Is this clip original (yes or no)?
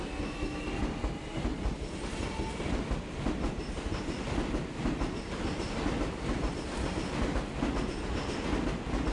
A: yes